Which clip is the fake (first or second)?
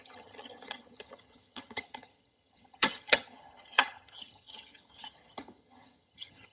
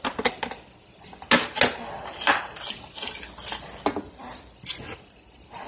first